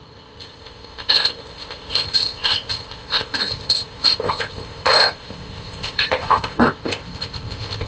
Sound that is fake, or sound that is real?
fake